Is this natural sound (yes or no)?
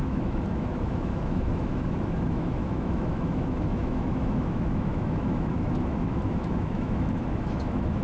no